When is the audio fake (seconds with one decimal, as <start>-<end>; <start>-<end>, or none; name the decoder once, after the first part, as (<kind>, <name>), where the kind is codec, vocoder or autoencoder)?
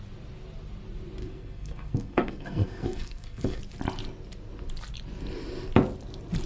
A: 1.2-3.6 (codec, SNAC)